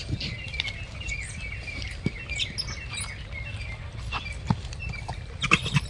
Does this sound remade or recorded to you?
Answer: recorded